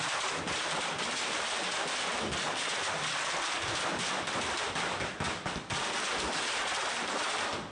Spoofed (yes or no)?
no